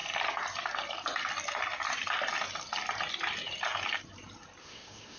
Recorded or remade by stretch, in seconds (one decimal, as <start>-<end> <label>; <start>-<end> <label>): 0.0-4.6 recorded; 4.6-5.2 remade

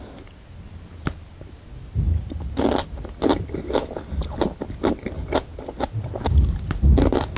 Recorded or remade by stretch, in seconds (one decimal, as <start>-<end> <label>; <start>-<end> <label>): 0.0-7.4 recorded

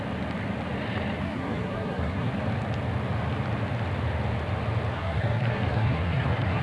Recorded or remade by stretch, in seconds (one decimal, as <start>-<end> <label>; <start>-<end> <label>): 0.0-1.2 recorded; 1.2-2.3 remade; 2.3-4.9 recorded; 4.9-6.6 remade

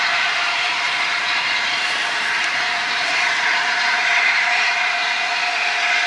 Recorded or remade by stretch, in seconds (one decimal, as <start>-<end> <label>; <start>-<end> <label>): 0.0-5.0 remade; 5.0-6.1 recorded